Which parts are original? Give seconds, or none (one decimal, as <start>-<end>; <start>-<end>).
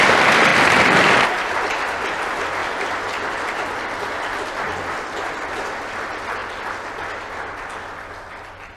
0.0-0.5; 1.5-2.6; 4.2-8.8